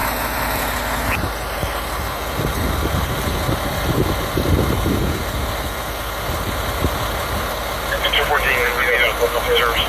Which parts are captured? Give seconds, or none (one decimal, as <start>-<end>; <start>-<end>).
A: 0.0-9.9